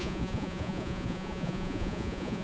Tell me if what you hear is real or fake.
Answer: fake